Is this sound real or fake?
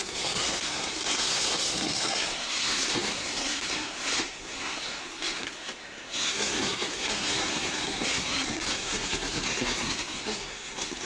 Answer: fake